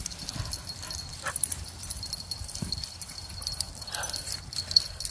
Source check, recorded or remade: remade